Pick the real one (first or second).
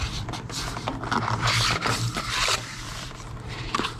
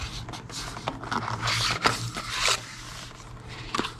second